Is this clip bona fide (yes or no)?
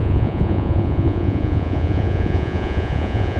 no